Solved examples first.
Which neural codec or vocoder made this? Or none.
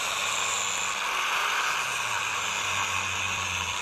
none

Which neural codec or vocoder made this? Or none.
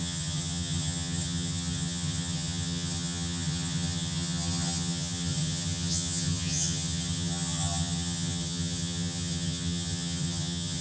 vocoder, HiFi-GAN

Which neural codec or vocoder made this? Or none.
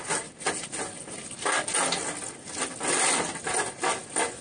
none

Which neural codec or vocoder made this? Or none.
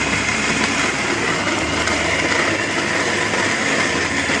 none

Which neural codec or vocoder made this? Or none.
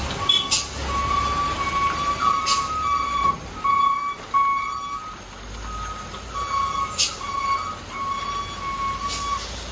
none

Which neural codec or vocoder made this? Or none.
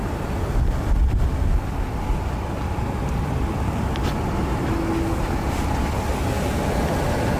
none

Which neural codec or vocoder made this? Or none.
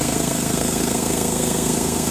codec, SNAC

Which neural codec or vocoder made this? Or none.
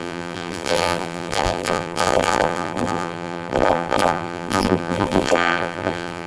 vocoder, BigVGAN v2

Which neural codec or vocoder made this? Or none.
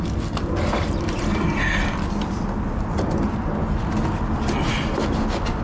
none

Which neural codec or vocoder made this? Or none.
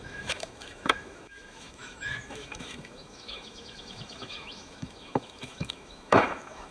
autoencoder, DAC-VAE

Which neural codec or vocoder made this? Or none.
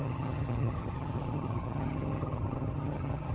vocoder, HiFi-GAN